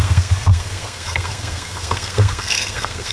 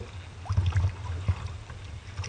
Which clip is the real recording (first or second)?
second